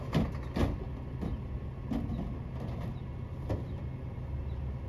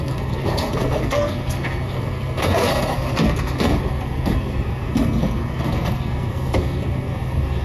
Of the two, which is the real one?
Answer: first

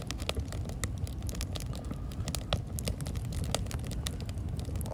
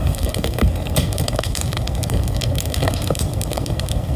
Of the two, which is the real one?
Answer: first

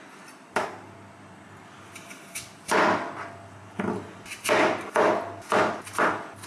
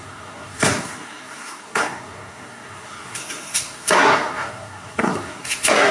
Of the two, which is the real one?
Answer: first